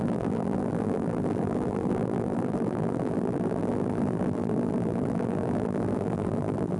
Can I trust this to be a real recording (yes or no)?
no